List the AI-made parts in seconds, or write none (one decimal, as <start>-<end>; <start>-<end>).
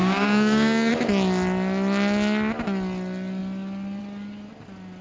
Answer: 0.0-0.9